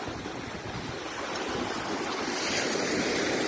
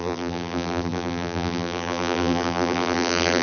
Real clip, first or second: first